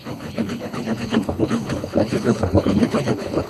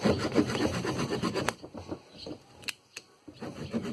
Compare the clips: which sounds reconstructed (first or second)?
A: first